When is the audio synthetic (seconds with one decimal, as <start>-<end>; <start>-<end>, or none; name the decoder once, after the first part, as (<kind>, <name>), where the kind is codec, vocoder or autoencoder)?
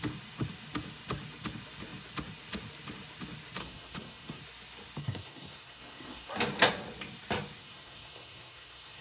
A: 3.6-4.4 (codec, SNAC); 5.0-6.3; 7.6-9.0